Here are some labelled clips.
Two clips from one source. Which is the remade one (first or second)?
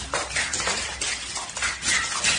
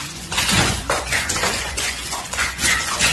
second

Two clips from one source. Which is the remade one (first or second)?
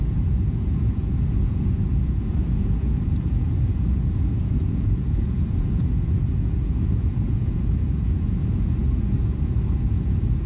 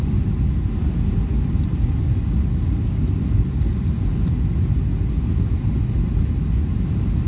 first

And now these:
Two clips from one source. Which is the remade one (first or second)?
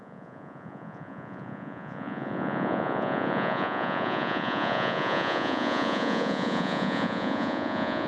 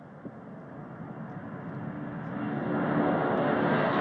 first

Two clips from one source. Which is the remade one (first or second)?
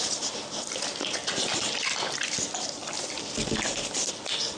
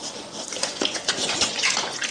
second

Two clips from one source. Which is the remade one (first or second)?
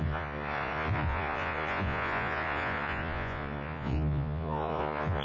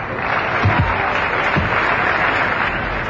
first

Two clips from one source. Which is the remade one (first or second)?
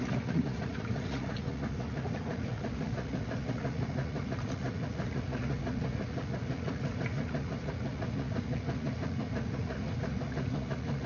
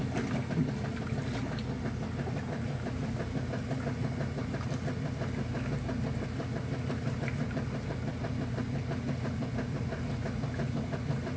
first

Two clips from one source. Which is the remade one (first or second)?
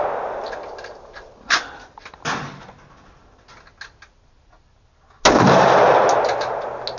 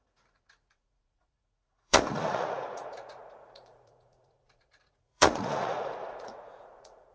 second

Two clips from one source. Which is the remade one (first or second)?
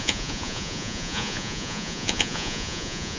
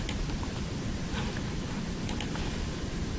first